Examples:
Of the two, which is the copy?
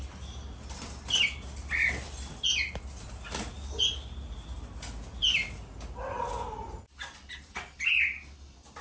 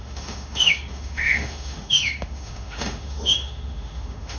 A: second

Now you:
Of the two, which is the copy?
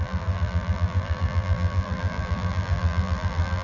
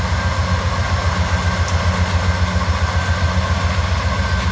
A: first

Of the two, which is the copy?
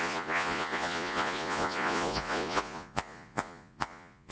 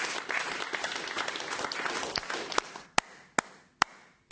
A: first